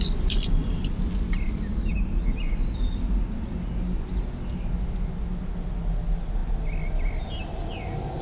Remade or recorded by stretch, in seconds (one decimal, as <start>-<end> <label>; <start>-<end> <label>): 0.0-8.2 recorded